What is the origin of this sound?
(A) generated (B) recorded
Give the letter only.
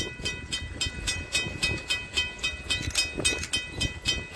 B